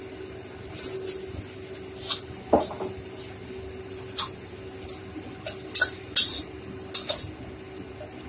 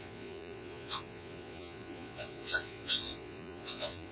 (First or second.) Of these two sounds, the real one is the first